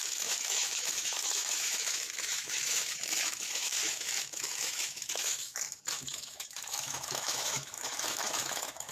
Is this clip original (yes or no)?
no